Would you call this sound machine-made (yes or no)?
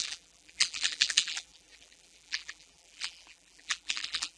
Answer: yes